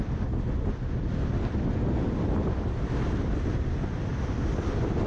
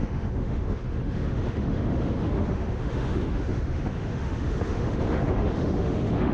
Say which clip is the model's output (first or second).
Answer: second